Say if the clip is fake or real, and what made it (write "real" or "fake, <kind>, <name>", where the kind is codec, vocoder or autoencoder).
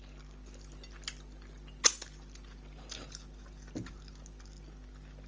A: real